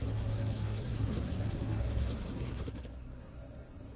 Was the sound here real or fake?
fake